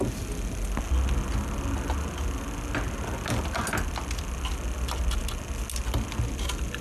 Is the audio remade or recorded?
recorded